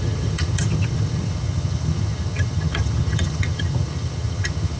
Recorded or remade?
remade